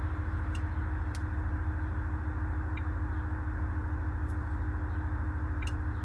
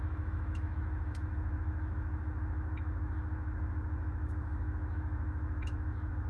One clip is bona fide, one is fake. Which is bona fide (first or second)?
first